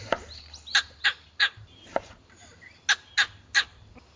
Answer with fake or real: real